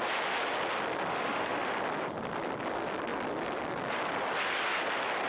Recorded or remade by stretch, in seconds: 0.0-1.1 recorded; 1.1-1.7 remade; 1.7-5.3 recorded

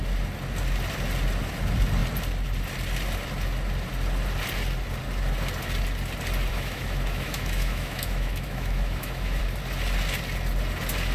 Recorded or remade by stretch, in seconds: 0.0-6.5 recorded; 6.5-9.4 remade; 9.4-11.1 recorded

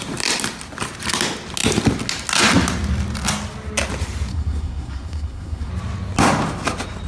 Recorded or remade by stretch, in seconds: 0.0-4.3 recorded; 4.3-5.7 remade; 5.7-7.1 recorded

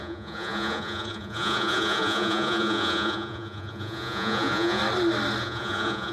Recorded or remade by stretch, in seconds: 0.0-4.8 remade; 4.8-5.4 recorded; 5.4-6.1 remade

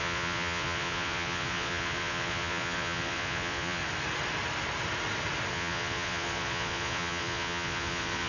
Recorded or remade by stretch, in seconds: 0.0-3.8 remade; 3.8-5.5 recorded; 5.5-8.3 remade